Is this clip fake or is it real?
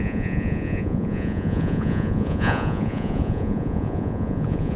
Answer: fake